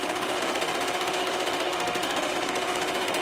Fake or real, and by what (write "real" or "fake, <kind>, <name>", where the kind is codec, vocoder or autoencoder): fake, autoencoder, DAC-VAE